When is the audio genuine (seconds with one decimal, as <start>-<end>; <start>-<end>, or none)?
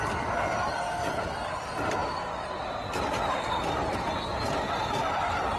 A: 0.0-5.6